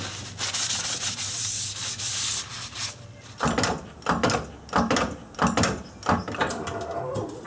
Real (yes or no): yes